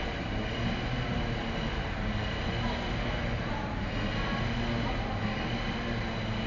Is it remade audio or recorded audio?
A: recorded